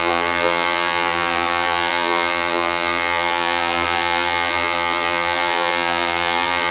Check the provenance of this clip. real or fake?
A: fake